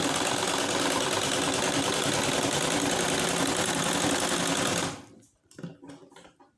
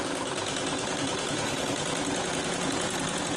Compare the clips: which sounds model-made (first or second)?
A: second